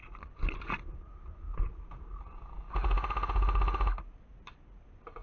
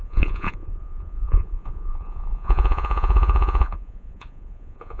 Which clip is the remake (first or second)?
second